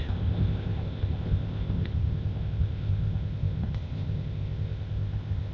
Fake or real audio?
fake